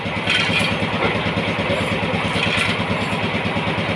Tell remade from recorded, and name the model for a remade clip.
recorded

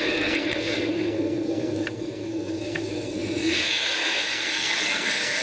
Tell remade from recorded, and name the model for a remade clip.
remade, codec, SNAC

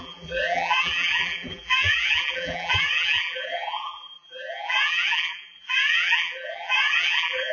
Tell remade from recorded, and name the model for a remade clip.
remade, vocoder, BigVGAN v2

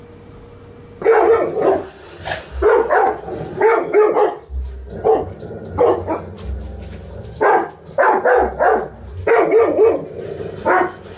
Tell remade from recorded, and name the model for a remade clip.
recorded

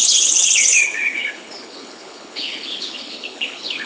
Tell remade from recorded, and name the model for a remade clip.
remade, codec, HILCodec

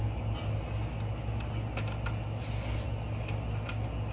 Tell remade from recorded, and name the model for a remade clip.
recorded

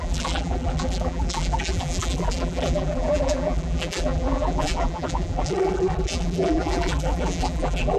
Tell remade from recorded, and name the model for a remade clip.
remade, vocoder, BigVGAN v2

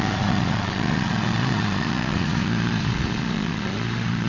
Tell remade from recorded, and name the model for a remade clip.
remade, vocoder, Vocos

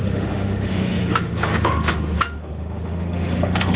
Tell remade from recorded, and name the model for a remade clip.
remade, autoencoder, DAC-VAE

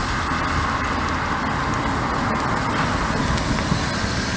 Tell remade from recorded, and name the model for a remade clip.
recorded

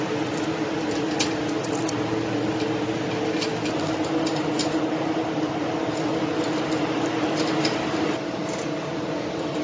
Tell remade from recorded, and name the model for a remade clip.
recorded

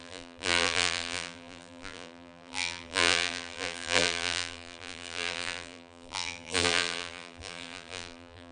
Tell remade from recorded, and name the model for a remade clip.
remade, vocoder, BigVGAN v2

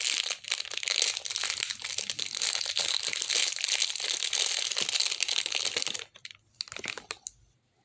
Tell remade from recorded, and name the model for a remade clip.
recorded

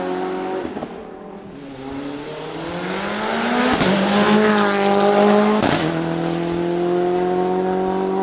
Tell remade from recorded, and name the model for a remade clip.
recorded